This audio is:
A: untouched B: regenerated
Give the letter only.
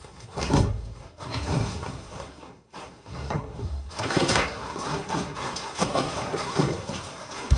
B